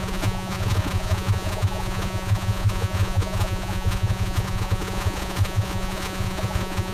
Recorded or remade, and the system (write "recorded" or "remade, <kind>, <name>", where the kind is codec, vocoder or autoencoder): remade, vocoder, Vocos